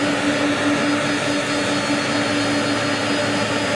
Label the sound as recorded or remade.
recorded